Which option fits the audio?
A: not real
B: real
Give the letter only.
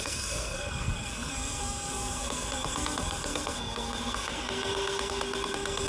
A